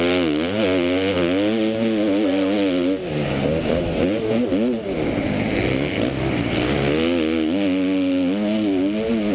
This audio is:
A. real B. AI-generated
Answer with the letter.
A